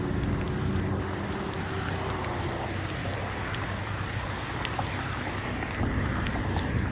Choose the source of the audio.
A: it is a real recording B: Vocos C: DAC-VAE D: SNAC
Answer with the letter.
A